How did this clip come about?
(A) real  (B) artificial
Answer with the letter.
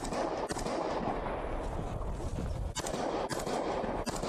A